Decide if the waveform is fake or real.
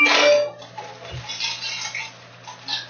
real